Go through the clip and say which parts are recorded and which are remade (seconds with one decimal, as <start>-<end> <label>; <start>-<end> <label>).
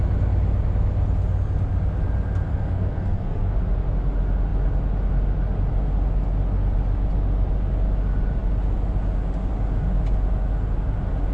0.0-2.5 recorded; 2.5-3.6 remade; 3.6-11.3 recorded